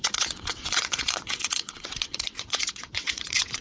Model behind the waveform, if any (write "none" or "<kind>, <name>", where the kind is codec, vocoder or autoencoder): vocoder, WaveNeXt